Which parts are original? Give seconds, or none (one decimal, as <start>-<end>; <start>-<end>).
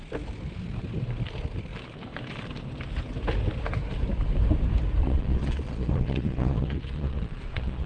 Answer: 0.0-5.0